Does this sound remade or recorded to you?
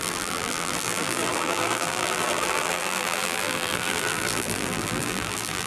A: remade